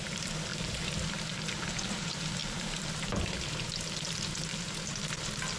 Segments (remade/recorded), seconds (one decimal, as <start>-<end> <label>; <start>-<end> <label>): 0.0-0.5 remade; 0.5-1.7 recorded; 1.7-5.6 remade